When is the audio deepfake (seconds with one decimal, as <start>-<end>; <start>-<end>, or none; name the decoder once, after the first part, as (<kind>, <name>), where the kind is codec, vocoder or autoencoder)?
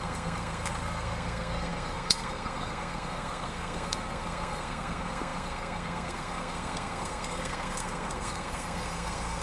0.0-9.4 (codec, SNAC)